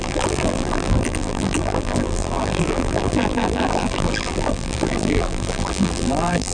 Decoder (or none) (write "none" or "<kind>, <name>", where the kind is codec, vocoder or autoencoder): vocoder, BigVGAN v2